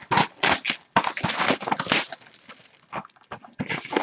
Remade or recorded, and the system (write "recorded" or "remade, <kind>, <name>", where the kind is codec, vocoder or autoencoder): recorded